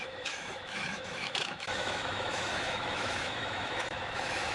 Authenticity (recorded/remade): remade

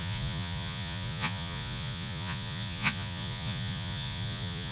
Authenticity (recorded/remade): remade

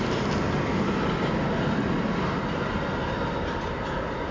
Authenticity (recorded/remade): recorded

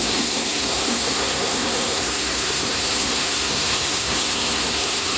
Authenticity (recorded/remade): remade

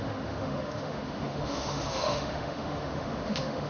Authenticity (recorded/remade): remade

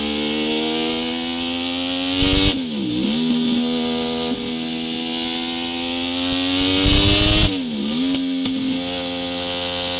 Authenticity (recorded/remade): recorded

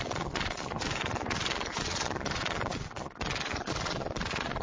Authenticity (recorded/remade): remade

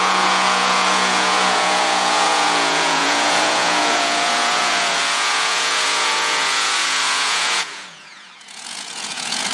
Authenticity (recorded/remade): remade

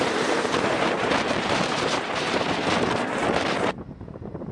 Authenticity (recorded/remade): remade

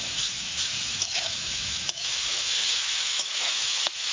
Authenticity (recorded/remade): remade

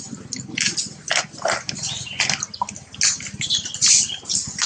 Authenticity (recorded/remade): recorded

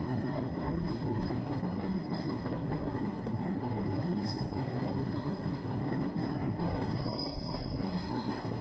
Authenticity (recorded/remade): remade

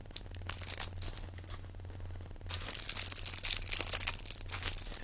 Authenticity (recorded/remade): recorded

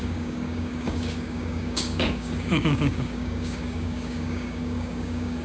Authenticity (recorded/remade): remade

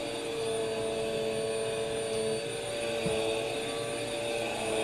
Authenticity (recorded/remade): recorded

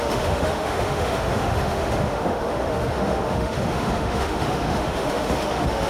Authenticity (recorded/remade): remade